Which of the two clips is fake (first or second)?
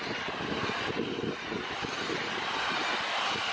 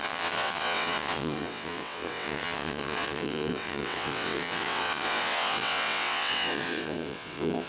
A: second